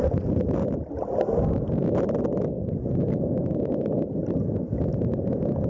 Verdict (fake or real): real